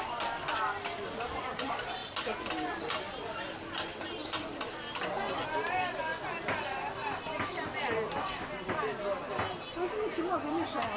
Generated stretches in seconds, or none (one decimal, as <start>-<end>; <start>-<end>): none